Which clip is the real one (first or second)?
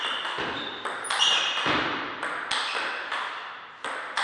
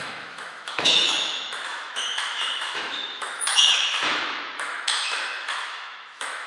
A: first